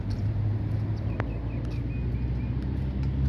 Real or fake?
real